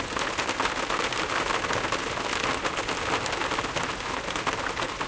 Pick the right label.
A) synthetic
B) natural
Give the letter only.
B